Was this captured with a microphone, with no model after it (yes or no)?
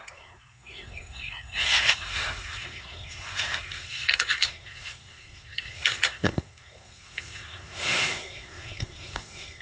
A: no